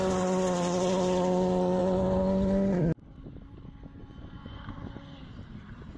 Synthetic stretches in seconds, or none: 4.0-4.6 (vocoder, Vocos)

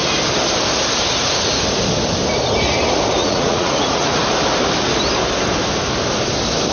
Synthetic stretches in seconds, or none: 3.2-4.2 (vocoder, Vocos)

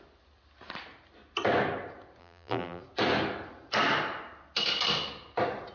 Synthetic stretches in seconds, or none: 2.2-2.8 (vocoder, BigVGAN v2)

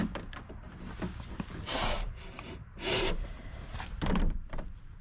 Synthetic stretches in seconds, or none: 1.7-5.0 (vocoder, BigVGAN v2)